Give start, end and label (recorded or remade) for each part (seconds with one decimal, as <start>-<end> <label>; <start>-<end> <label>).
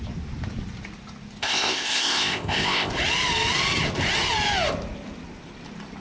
0.0-1.4 recorded; 1.4-2.9 remade; 2.9-6.0 recorded